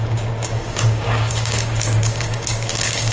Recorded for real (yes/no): no